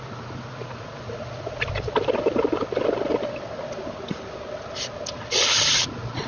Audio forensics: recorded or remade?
recorded